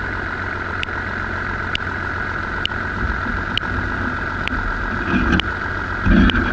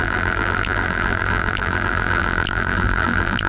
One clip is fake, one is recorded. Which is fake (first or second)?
second